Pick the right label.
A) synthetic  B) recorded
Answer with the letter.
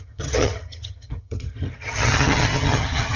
A